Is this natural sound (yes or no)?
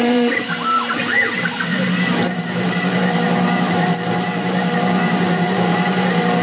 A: no